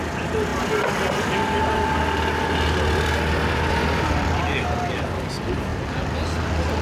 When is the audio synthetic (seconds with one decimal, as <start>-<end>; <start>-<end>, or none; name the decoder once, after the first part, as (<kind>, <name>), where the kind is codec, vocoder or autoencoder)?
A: none